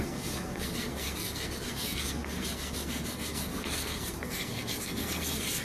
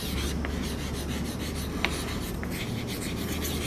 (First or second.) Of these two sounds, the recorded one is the second